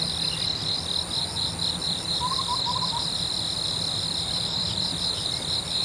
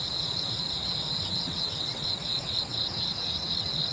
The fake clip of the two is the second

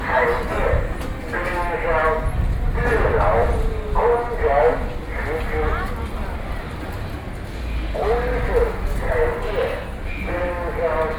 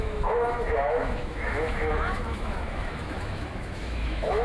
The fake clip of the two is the second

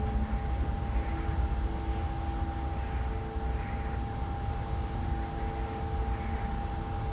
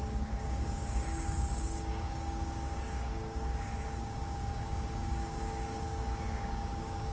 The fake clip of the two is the second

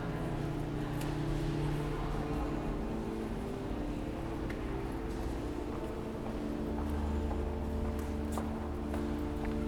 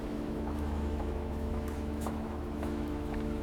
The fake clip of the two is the second